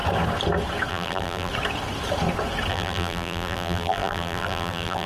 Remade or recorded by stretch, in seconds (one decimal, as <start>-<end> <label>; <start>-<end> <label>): 0.0-0.9 recorded; 0.9-1.5 remade; 1.5-2.7 recorded; 2.7-5.1 remade